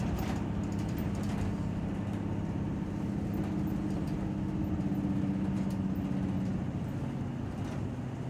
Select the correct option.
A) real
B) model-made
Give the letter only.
A